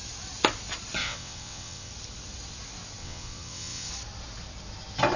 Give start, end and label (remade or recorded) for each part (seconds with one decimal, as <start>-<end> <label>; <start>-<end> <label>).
0.0-1.0 recorded; 1.0-1.9 remade; 1.9-3.0 recorded; 3.0-3.9 remade; 3.9-5.2 recorded